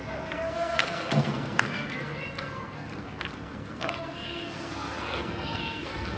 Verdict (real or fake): fake